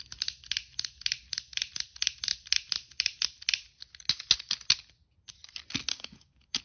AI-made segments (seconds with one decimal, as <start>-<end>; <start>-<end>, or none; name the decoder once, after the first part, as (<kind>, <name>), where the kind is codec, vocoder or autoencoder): 5.9-6.6 (codec, DAC)